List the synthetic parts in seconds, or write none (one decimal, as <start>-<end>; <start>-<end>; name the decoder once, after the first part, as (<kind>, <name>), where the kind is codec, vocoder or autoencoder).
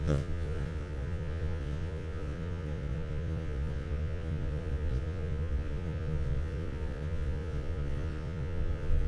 0.0-9.1 (vocoder, Vocos)